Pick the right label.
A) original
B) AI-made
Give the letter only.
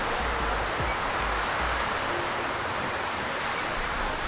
A